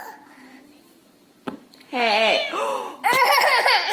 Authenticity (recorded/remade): recorded